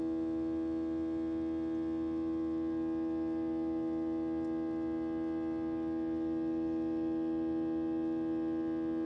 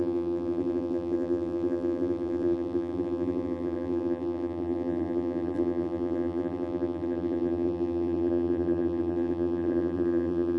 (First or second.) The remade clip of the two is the second